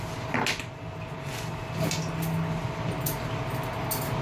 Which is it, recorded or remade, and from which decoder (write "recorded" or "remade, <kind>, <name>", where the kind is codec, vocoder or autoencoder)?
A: recorded